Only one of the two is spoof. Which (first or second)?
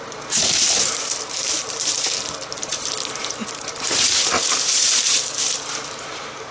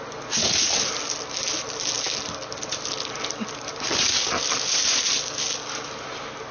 first